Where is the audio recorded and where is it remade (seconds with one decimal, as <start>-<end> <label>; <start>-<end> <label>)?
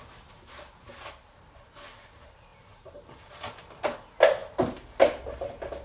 0.0-2.5 recorded; 2.5-3.6 remade; 3.6-5.8 recorded